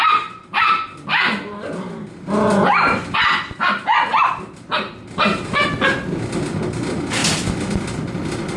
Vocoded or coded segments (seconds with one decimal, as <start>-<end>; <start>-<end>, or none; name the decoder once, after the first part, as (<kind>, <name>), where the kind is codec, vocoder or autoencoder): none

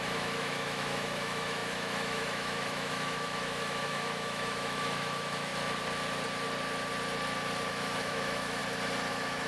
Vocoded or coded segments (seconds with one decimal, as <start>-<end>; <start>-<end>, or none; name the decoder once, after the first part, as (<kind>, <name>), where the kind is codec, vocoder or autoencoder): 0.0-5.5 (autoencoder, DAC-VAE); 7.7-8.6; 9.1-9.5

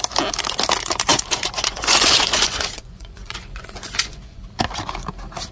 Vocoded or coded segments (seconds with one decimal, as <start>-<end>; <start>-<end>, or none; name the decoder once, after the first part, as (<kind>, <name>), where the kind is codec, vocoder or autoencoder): 1.1-4.4 (vocoder, Vocos)

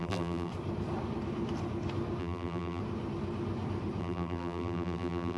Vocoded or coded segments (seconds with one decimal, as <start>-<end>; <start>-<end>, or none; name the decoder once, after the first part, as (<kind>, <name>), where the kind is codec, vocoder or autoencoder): 0.0-0.5 (vocoder, BigVGAN v2); 2.2-2.8; 4.0-5.4